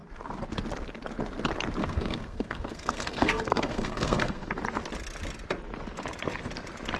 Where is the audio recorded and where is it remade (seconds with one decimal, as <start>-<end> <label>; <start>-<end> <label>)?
0.0-1.8 recorded; 1.8-4.5 remade; 4.5-7.0 recorded